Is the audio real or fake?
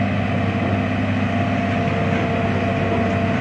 real